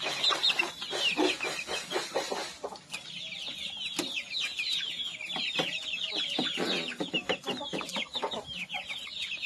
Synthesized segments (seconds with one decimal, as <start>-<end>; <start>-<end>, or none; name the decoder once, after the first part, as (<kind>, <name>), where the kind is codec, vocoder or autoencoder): none